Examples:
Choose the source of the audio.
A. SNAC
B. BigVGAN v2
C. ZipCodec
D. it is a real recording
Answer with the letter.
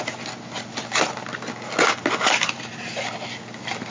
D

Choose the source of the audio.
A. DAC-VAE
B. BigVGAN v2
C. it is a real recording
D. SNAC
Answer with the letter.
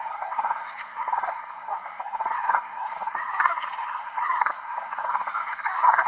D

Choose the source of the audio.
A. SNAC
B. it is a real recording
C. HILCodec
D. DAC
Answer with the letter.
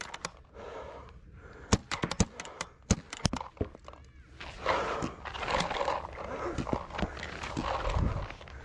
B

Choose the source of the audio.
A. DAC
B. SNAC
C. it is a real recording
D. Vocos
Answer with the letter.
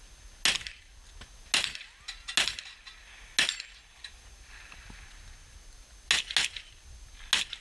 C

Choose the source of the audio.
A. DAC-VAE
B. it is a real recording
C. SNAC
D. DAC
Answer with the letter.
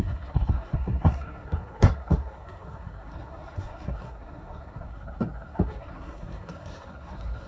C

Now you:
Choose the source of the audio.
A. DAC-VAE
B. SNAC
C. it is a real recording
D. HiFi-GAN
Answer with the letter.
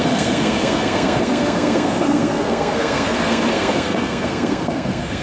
B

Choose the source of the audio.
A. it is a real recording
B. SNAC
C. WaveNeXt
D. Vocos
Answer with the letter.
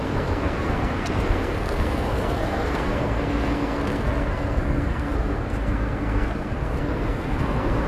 B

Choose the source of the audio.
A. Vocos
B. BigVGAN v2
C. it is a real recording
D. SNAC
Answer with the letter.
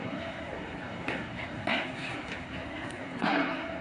D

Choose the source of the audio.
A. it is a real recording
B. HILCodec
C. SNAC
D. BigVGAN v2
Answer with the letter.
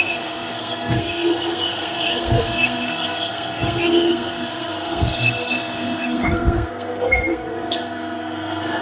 C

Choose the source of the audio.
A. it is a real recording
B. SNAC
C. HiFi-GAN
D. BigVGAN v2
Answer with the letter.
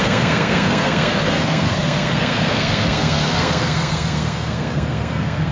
B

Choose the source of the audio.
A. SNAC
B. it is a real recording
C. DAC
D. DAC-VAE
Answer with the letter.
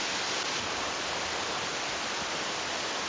B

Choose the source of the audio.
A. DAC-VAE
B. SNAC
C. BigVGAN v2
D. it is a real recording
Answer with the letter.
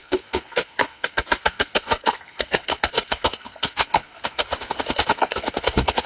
B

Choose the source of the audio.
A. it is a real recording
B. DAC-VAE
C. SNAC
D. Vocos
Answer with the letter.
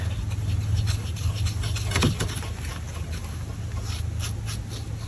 A